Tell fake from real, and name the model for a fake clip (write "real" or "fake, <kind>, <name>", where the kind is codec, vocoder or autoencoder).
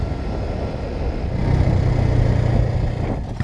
real